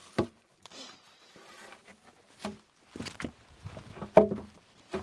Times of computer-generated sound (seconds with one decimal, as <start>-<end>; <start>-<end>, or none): 0.0-1.9; 4.5-5.0